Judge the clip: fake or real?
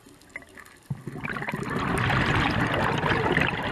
real